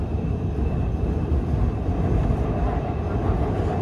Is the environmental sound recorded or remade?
recorded